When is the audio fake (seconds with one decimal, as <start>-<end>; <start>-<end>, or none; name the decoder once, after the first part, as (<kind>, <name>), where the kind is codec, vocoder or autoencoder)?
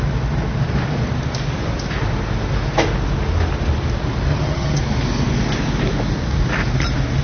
4.3-4.8 (vocoder, HiFi-GAN)